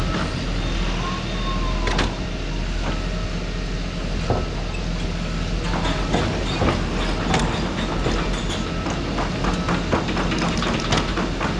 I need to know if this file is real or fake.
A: real